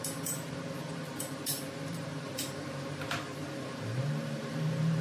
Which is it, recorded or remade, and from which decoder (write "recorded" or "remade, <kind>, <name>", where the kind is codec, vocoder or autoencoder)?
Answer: remade, vocoder, BigVGAN v2